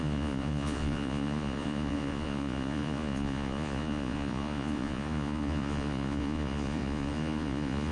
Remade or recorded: remade